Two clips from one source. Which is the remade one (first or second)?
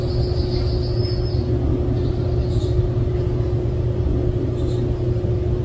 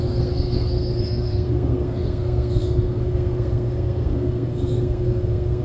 second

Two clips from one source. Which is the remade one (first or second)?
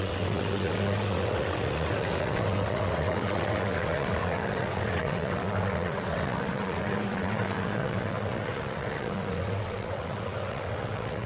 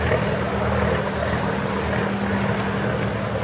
first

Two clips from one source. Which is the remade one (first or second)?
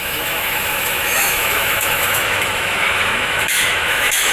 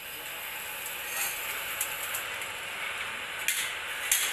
first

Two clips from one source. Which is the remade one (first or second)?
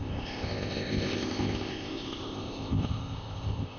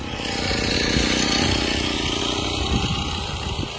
first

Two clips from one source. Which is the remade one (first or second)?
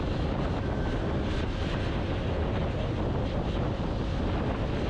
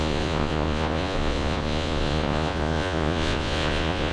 second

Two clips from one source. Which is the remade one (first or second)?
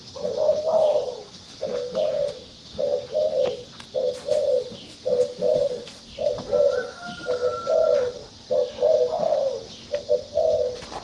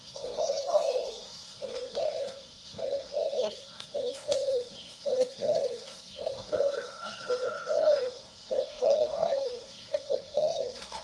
second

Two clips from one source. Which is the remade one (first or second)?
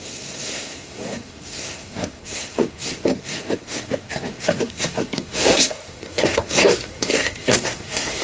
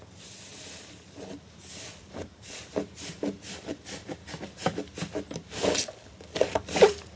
first